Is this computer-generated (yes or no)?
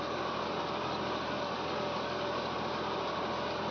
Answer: no